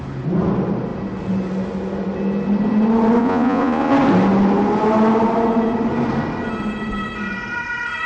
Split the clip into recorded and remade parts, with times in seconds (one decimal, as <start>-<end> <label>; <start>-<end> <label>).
0.0-3.2 recorded; 3.2-3.9 remade; 3.9-8.1 recorded

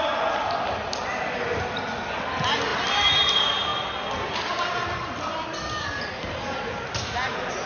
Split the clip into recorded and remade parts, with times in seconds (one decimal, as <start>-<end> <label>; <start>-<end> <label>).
0.0-7.7 recorded

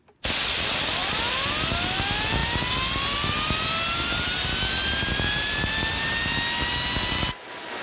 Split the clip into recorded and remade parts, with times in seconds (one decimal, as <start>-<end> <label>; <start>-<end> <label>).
0.0-7.8 recorded

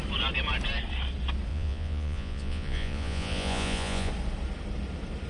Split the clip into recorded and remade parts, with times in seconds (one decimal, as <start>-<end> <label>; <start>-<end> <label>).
0.0-1.5 recorded; 1.5-4.1 remade; 4.1-5.3 recorded